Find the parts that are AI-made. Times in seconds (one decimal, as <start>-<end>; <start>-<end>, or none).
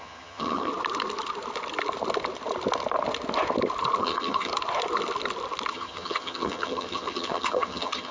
0.0-0.7; 4.0-4.5; 5.7-8.1